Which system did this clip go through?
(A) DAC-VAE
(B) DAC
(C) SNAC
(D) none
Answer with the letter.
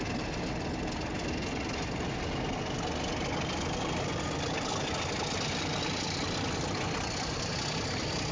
D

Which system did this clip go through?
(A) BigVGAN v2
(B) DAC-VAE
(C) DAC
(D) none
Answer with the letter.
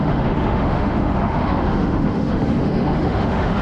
B